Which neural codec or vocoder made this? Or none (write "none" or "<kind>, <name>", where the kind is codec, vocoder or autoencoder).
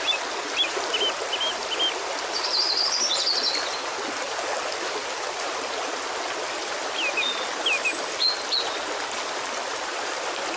none